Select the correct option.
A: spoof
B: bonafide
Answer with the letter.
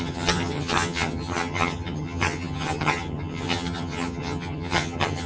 A